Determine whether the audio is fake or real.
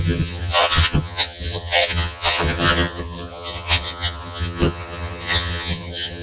fake